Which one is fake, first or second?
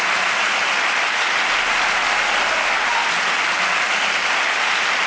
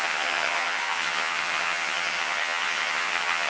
second